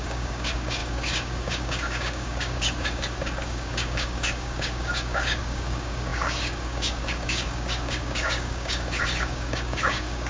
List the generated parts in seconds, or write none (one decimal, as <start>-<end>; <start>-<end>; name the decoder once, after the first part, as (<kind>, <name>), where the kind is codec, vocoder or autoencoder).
0.0-10.3 (codec, DAC)